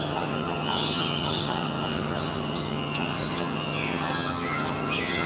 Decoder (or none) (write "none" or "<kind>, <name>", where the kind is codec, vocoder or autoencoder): vocoder, HiFi-GAN